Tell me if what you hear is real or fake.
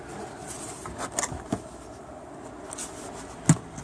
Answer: real